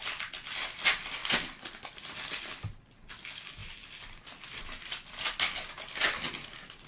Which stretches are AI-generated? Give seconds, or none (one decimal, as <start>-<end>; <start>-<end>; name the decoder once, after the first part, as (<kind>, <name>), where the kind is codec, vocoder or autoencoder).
none